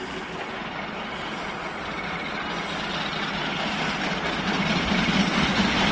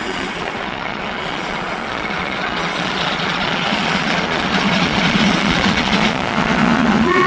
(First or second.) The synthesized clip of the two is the second